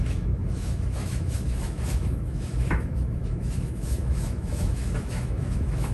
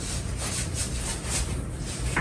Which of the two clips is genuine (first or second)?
second